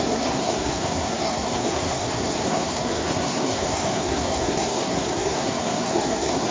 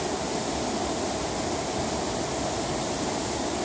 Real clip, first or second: second